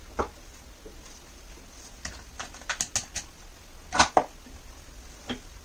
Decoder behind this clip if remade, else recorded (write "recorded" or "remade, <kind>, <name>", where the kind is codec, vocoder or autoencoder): recorded